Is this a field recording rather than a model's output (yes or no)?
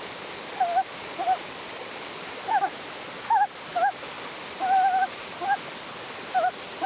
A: yes